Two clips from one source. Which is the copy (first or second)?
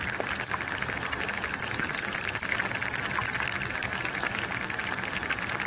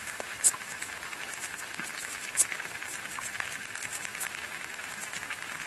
second